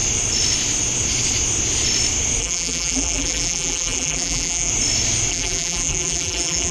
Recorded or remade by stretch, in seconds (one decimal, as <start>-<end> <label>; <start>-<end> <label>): 0.0-2.4 recorded; 2.4-4.7 remade; 4.7-5.3 recorded; 5.3-6.7 remade